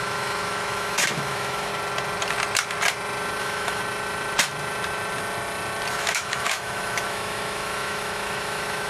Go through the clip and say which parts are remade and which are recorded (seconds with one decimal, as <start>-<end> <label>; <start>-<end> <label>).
0.0-1.7 remade; 1.7-3.4 recorded; 3.4-3.8 remade; 3.8-5.9 recorded; 5.9-8.9 remade